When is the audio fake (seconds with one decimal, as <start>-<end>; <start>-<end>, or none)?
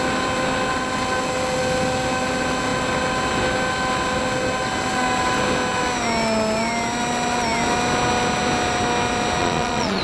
9.4-10.0